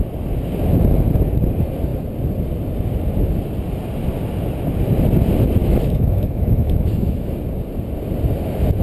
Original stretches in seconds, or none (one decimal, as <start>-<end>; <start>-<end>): 0.0-5.6; 7.3-8.8